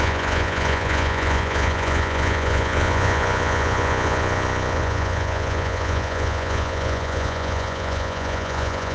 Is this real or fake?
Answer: fake